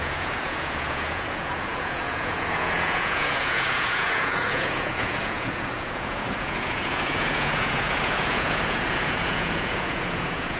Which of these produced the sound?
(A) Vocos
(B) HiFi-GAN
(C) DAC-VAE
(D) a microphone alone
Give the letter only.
A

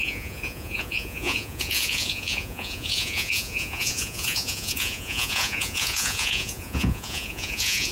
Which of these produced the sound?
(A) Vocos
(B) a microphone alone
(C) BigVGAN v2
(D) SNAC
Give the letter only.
A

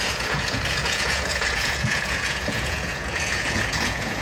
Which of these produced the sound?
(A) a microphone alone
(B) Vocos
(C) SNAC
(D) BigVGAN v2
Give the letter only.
B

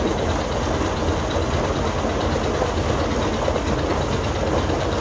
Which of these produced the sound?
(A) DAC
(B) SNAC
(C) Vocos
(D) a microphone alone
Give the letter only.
D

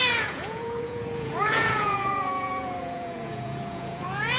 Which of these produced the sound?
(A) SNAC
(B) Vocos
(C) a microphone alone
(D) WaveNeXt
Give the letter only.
B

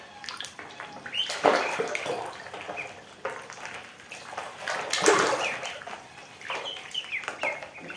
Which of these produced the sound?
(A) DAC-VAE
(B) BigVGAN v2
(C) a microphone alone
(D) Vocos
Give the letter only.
C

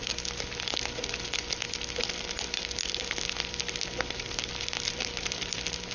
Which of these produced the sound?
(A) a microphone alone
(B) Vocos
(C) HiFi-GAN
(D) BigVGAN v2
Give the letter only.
A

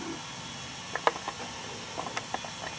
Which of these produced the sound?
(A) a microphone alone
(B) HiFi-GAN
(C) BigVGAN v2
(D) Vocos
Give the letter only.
A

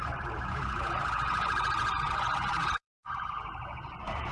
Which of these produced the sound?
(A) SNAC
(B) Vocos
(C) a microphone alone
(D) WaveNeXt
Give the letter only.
B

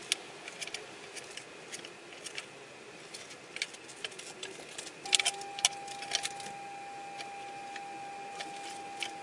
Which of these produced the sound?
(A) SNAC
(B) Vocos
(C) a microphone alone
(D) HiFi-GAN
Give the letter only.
C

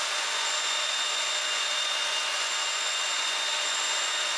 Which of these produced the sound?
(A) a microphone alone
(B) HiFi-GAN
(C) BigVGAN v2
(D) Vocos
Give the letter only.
D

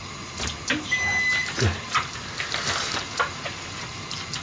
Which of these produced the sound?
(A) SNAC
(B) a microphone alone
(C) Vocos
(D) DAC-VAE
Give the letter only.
B